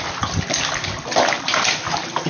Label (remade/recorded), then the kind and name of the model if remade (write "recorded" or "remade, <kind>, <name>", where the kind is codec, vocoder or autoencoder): recorded